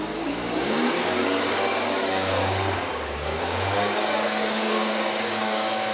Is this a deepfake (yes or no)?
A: yes